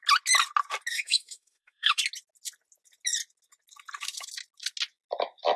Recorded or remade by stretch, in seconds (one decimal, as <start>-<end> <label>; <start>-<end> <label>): 0.0-0.9 recorded; 0.9-2.0 remade; 2.0-5.6 recorded